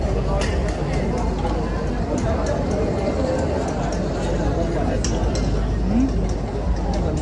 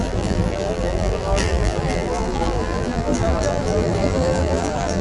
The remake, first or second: second